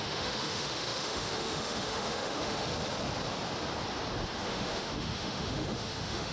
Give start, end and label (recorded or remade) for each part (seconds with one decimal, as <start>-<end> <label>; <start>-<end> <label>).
0.0-2.7 remade; 2.7-4.4 recorded; 4.4-6.3 remade